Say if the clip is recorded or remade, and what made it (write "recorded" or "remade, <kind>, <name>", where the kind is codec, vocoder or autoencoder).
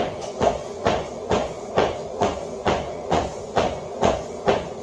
remade, vocoder, Vocos